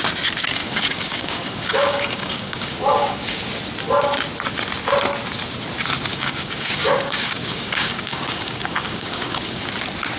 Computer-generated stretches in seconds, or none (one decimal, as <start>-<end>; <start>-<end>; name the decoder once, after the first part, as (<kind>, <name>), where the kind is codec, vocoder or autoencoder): 0.6-3.4 (codec, DAC); 6.1-9.6

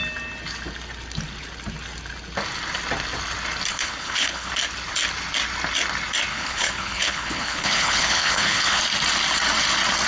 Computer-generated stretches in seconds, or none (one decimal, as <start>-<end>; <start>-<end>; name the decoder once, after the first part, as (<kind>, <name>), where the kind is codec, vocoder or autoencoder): 3.7-4.5 (codec, HILCodec); 6.3-8.8